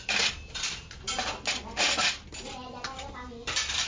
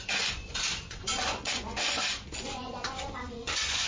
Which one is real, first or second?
first